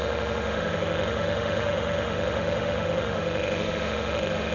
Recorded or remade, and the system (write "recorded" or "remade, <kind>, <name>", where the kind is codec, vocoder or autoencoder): remade, autoencoder, DAC-VAE